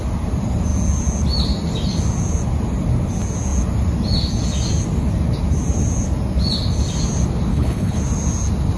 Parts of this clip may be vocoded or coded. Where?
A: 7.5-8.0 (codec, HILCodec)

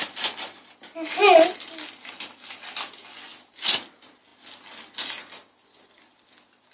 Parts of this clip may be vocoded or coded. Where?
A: 3.3-3.9 (vocoder, BigVGAN v2)

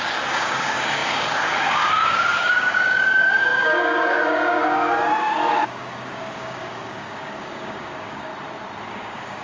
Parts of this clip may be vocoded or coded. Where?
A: 0.0-8.3 (codec, DAC); 8.9-9.4

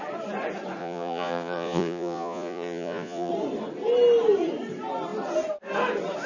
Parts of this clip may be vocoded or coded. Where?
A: 0.8-3.3 (vocoder, Vocos)

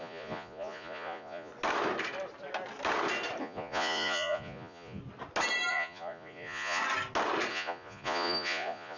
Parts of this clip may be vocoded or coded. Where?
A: 0.0-1.5 (vocoder, Vocos); 3.4-5.0; 5.7-6.8; 7.5-9.0

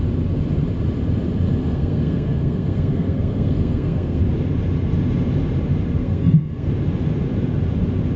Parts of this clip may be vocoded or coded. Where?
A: 1.6-4.2 (codec, SNAC); 6.0-6.7

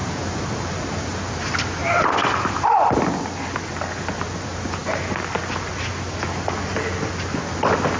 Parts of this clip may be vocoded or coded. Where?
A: none

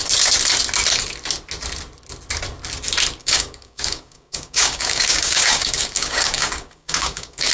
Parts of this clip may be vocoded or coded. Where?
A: 3.2-7.5 (codec, DAC)